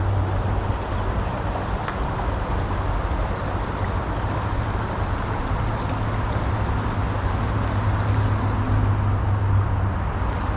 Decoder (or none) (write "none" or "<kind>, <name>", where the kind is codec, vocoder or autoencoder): none